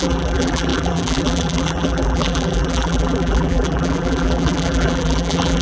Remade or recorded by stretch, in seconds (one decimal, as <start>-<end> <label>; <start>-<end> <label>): 0.0-5.6 remade